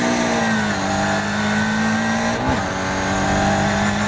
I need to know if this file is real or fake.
real